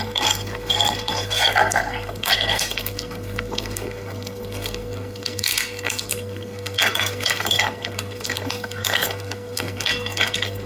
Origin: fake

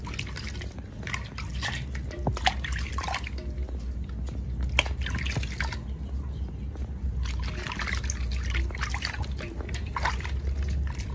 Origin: real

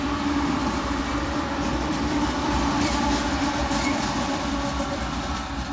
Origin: fake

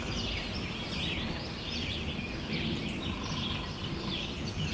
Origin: real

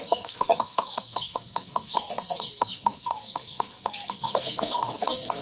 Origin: fake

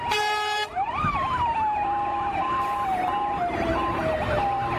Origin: fake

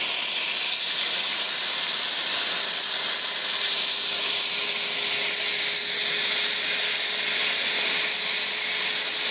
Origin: real